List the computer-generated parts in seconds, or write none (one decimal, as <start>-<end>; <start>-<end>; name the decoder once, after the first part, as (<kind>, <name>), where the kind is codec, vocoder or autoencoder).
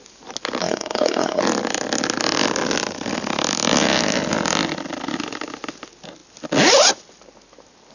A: 0.6-1.4 (codec, SNAC)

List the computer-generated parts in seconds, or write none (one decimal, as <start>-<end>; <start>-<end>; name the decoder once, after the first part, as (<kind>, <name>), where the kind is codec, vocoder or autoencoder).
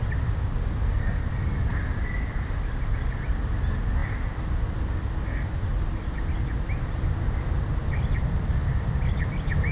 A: 0.6-1.3 (codec, SNAC)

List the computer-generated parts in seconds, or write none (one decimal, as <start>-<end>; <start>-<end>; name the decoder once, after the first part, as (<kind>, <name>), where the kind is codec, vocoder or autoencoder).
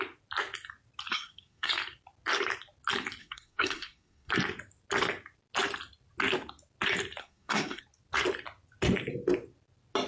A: 1.1-1.7 (codec, SNAC); 3.2-4.3; 7.2-7.8